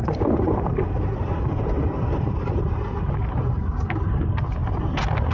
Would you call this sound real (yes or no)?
no